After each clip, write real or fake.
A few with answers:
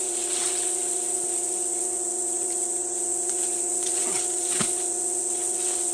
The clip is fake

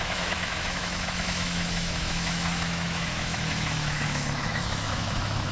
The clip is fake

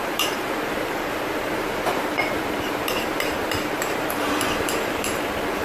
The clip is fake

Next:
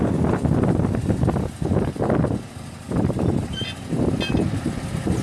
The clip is real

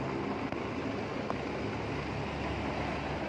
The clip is real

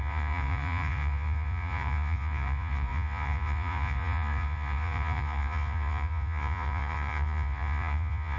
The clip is fake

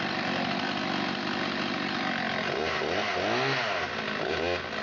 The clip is real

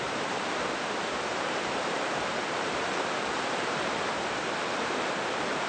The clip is fake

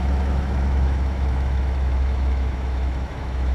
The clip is fake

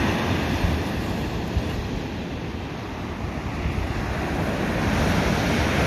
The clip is real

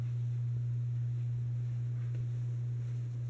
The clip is real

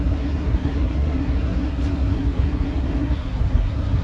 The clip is fake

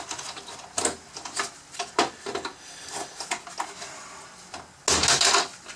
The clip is real